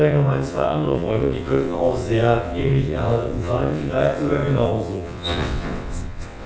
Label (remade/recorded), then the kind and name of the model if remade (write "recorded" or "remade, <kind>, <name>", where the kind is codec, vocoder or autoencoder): remade, vocoder, WaveNeXt